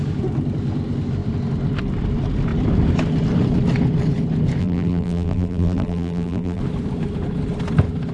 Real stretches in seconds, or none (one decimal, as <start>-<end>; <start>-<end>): 0.0-4.6; 6.6-8.1